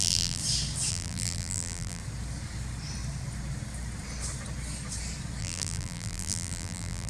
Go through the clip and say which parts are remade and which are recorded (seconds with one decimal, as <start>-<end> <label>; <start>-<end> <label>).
0.0-0.4 remade; 0.4-0.9 recorded; 0.9-2.0 remade; 2.0-5.4 recorded; 5.4-7.1 remade